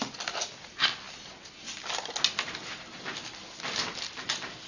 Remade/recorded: recorded